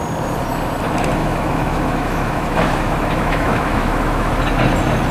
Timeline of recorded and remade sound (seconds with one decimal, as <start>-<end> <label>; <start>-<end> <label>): 0.0-1.2 recorded; 1.2-4.3 remade; 4.3-5.1 recorded